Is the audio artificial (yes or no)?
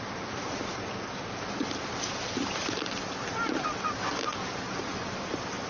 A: no